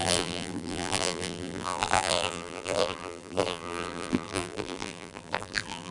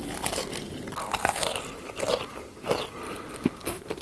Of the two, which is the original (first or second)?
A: second